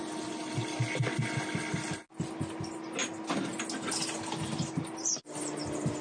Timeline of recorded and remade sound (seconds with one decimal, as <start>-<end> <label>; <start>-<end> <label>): 0.0-6.0 recorded